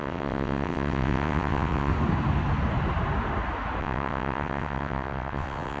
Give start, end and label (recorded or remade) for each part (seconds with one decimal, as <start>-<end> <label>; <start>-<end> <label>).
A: 0.0-1.9 remade; 1.9-3.8 recorded; 3.8-5.8 remade